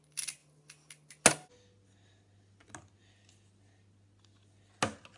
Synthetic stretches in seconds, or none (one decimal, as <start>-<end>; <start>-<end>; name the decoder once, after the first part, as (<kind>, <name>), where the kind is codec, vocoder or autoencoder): none